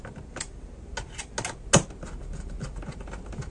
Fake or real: real